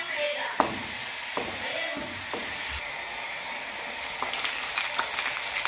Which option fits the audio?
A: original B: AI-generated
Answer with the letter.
A